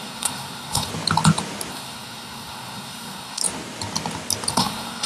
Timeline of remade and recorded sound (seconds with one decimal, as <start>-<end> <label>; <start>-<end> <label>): 0.0-0.9 remade; 0.9-1.7 recorded; 1.7-3.4 remade; 3.4-4.5 recorded; 4.5-5.1 remade